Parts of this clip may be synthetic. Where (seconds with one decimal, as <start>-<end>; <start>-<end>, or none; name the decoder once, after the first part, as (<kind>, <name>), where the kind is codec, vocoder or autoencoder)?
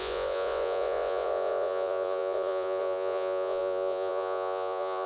0.0-5.1 (vocoder, Vocos)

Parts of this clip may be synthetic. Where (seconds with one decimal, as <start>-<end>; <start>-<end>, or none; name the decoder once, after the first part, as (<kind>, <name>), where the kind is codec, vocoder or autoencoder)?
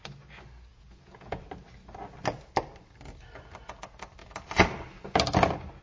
0.7-1.4 (vocoder, Vocos)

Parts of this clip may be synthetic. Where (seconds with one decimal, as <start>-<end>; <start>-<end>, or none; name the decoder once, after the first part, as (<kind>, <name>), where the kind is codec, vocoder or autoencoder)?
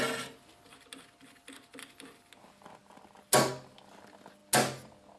none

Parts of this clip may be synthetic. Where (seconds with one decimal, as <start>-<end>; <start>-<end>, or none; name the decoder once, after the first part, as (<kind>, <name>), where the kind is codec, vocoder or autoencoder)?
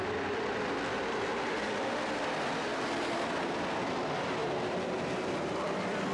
0.0-2.7 (vocoder, BigVGAN v2); 3.2-4.4; 5.5-6.1